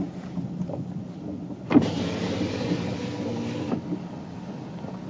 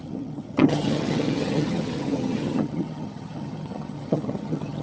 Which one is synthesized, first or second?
second